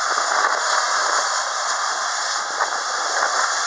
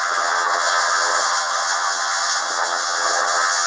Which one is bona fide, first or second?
first